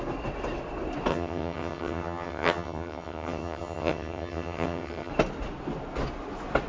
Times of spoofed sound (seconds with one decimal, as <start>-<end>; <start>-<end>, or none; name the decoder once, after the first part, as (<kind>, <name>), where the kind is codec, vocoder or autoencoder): 1.1-5.1 (vocoder, HiFi-GAN)